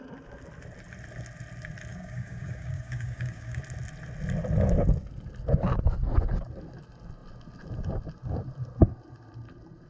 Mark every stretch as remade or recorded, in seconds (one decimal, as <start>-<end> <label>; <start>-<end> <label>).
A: 0.0-1.9 recorded; 1.9-3.6 remade; 3.6-9.9 recorded